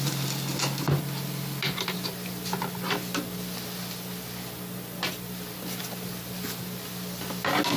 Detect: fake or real real